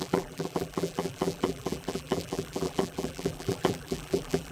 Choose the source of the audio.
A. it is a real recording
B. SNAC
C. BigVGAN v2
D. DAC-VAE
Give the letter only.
C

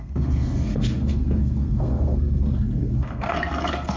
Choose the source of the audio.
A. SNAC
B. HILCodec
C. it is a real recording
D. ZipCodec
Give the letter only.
A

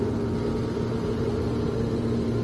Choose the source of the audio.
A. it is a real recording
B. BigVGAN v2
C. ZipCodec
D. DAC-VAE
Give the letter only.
A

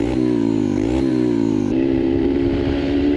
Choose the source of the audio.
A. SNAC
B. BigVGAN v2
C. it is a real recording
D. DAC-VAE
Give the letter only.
B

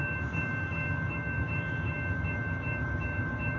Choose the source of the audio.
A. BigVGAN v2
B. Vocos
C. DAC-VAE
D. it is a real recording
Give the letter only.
C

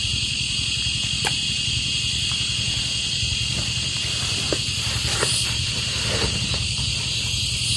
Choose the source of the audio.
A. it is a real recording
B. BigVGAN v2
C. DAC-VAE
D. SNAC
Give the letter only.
B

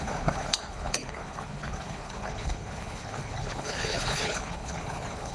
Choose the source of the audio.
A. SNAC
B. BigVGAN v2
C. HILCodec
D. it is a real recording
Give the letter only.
C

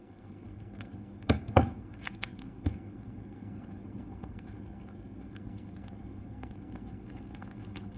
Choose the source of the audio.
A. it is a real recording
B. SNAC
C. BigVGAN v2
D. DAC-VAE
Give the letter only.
B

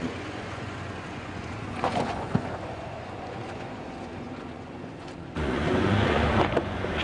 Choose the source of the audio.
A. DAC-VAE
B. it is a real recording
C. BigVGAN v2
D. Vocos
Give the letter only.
D